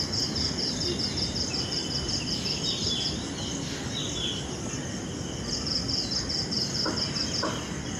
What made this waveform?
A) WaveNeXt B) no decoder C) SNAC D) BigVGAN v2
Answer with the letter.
D